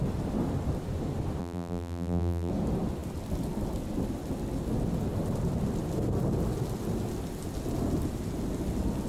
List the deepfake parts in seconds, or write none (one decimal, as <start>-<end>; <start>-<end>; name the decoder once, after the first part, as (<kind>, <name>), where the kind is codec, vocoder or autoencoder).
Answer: 1.4-2.5 (vocoder, BigVGAN v2)